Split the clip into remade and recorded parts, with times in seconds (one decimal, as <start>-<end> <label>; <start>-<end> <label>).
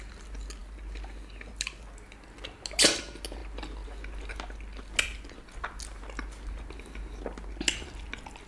0.0-8.5 recorded